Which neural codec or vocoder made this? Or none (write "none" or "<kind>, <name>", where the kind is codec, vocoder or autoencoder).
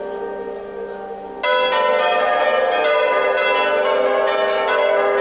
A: none